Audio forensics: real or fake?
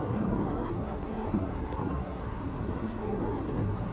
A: fake